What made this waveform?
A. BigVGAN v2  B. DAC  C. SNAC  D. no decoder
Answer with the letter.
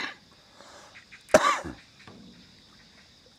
D